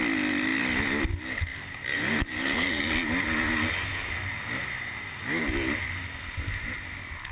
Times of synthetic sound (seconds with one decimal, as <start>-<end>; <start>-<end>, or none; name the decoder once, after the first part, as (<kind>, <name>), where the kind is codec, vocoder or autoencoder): 1.5-2.8 (vocoder, BigVGAN v2)